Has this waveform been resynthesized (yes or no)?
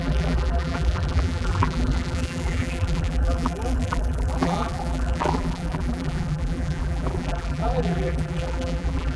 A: yes